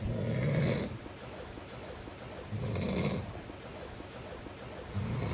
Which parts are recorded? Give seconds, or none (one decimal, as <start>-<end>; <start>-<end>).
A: 0.0-1.2; 2.2-3.7; 4.3-5.3